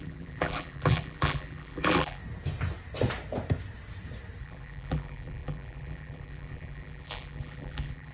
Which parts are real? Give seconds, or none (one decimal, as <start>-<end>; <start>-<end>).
2.2-4.4